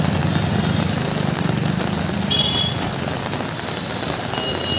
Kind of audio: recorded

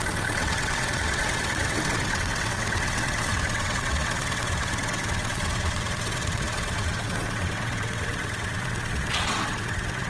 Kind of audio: remade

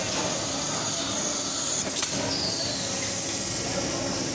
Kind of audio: recorded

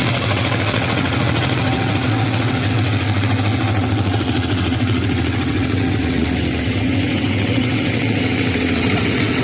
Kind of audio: remade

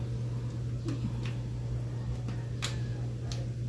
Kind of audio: recorded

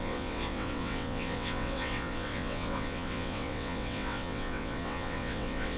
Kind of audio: remade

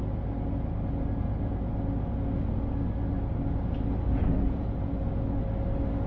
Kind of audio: recorded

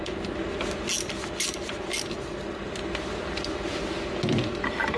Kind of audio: recorded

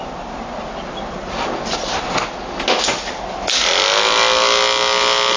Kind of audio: recorded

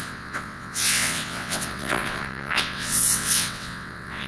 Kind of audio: remade